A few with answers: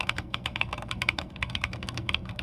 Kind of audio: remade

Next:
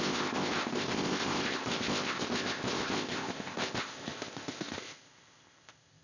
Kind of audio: remade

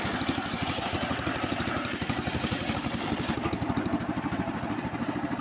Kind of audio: remade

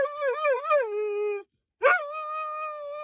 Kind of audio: recorded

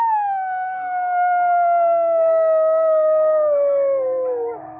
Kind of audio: recorded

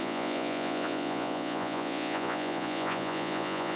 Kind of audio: remade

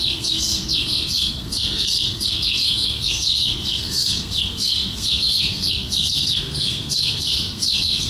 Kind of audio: remade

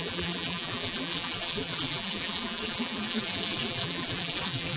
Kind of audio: remade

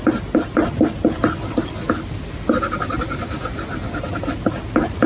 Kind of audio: recorded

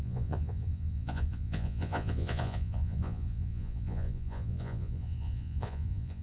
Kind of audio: remade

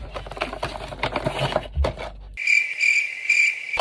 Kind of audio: recorded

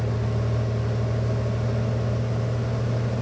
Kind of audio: recorded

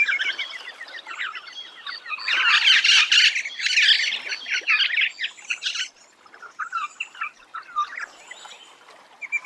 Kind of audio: recorded